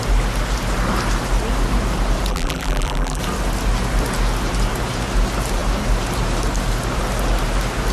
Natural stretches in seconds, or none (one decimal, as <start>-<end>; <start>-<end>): 0.0-2.3; 3.2-7.9